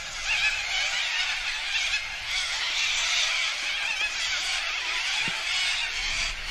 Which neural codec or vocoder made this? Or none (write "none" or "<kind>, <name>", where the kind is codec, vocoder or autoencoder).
none